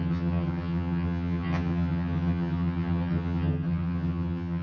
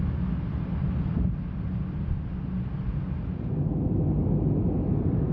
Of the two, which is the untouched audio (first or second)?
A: second